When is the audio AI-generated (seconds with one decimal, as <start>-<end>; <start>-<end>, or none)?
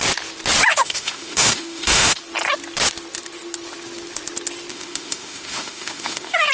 0.7-2.2; 4.7-6.5